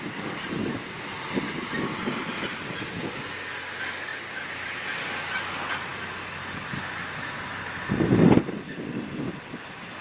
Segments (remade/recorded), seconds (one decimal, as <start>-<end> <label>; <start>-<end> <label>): 0.0-10.0 recorded